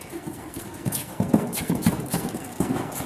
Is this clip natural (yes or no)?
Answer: no